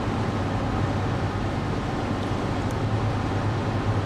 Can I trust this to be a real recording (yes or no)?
yes